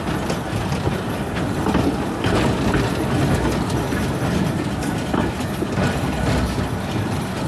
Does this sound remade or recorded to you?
recorded